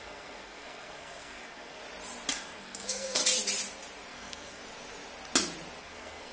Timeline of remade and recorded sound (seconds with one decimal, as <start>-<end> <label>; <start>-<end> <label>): 0.0-1.8 remade; 1.8-2.3 recorded; 2.3-3.2 remade; 3.2-4.1 recorded; 4.1-4.6 remade; 4.6-5.8 recorded; 5.8-6.3 remade